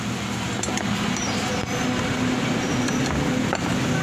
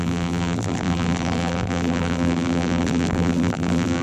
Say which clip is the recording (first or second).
first